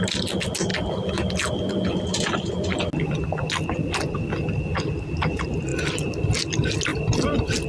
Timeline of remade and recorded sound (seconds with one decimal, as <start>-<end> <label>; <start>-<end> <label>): 0.0-6.9 recorded; 6.9-7.7 remade